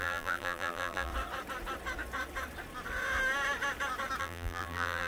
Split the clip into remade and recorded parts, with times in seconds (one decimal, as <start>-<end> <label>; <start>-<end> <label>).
0.0-1.1 remade; 1.1-4.2 recorded; 4.2-5.1 remade